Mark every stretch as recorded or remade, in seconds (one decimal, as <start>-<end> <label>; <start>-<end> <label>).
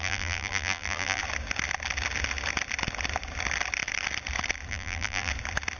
0.0-1.2 remade; 1.2-4.7 recorded; 4.7-5.3 remade; 5.3-5.8 recorded